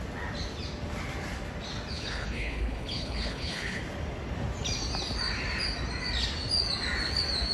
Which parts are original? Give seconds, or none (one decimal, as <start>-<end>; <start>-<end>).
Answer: 0.0-1.9; 3.8-7.5